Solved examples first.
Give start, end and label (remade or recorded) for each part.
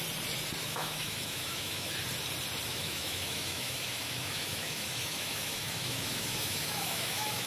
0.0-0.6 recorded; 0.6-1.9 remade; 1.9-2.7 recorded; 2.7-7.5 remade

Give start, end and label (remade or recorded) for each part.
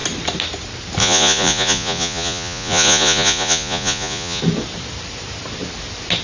0.0-1.0 recorded; 1.0-4.4 remade; 4.4-6.2 recorded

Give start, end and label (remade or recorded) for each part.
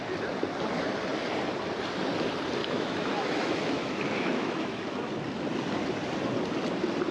0.0-2.6 recorded; 2.6-4.8 remade; 4.8-7.1 recorded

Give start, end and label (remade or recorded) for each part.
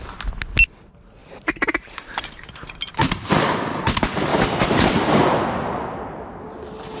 0.0-1.2 recorded; 1.2-2.9 remade; 2.9-4.3 recorded; 4.3-6.6 remade; 6.6-7.0 recorded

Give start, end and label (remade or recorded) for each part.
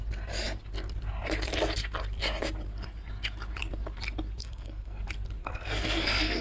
0.0-4.4 recorded; 4.4-5.0 remade; 5.0-5.4 recorded; 5.4-6.4 remade